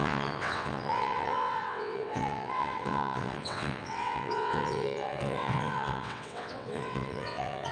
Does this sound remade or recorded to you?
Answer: remade